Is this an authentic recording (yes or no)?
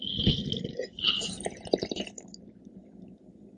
yes